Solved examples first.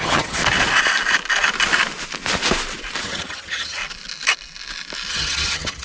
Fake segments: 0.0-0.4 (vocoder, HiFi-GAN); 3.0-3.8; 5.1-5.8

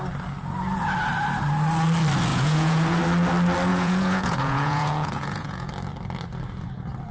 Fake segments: 2.3-3.0 (vocoder, Vocos); 3.7-5.7

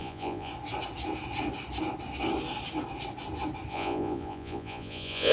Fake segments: 0.0-0.5 (vocoder, Vocos); 3.7-5.3

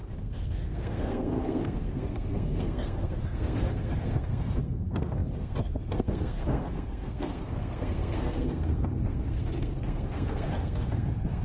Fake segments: 0.0-11.4 (codec, SNAC)

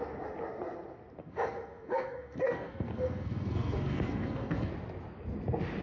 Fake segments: 1.2-4.7 (codec, SNAC)